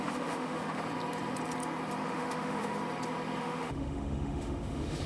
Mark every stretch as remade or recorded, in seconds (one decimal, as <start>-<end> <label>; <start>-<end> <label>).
0.0-0.8 remade; 0.8-2.0 recorded; 2.0-2.8 remade; 2.8-3.4 recorded; 3.4-5.1 remade